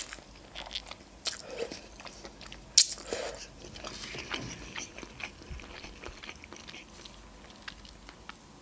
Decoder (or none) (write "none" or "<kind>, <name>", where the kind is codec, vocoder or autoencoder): none